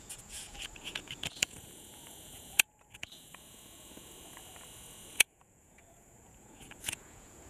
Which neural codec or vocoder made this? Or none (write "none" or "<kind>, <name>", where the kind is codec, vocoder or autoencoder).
vocoder, Vocos